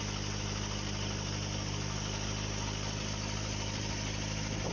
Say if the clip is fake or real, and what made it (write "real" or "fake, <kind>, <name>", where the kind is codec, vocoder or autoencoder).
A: real